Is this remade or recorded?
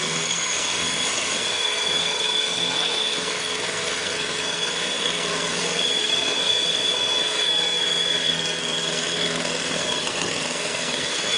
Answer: remade